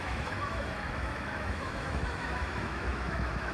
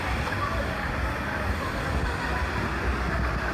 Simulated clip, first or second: first